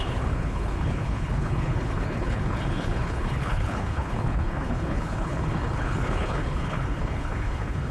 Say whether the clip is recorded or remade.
remade